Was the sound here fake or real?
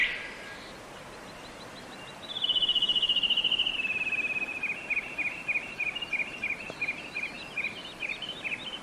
real